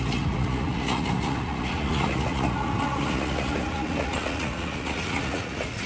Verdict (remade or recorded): remade